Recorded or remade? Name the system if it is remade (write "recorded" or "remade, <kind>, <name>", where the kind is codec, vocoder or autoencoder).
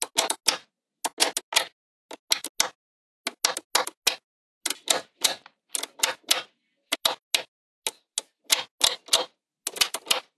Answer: recorded